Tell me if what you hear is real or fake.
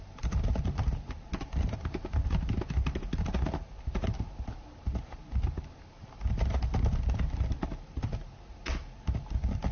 real